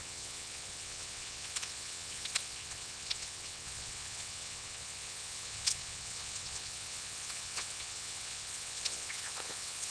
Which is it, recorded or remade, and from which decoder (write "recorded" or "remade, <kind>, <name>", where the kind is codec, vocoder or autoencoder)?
remade, vocoder, WaveNeXt